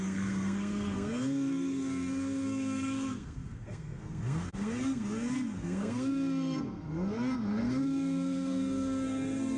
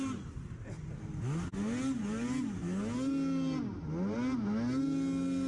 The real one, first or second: second